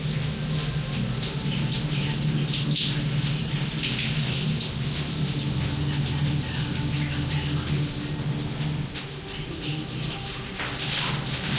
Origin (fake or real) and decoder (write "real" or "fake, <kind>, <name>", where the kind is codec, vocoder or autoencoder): real